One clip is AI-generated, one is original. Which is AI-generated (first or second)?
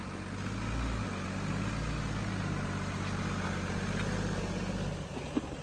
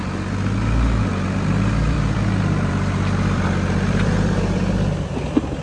second